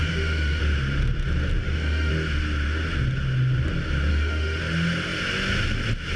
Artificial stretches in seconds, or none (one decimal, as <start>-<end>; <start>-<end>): 0.0-0.6; 1.6-2.1; 4.1-4.6